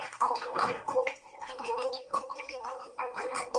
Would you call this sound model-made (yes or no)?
yes